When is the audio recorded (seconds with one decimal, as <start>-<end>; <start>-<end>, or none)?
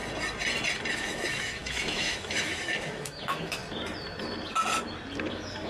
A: 0.0-0.9; 3.6-5.3